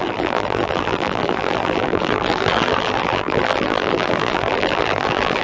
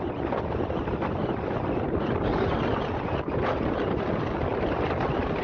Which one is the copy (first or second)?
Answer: first